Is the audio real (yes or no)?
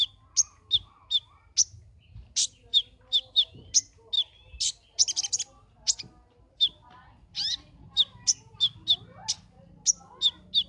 yes